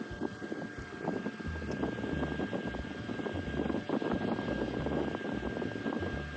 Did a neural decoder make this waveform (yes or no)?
no